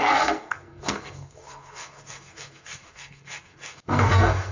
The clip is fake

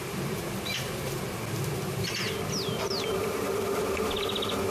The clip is real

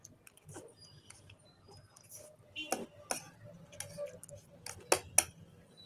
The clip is real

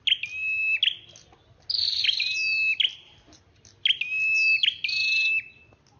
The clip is real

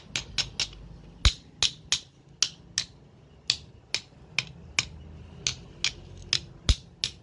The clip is real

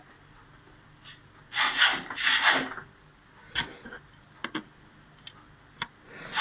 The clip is real